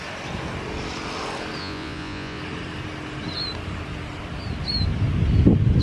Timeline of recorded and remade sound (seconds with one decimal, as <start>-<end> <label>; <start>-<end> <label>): 0.0-1.6 recorded; 1.6-2.4 remade; 2.4-5.8 recorded